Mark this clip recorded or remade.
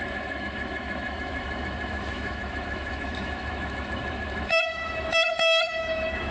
remade